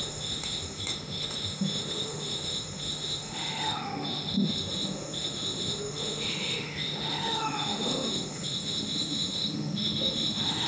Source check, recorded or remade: remade